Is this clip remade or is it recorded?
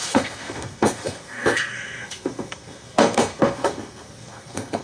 remade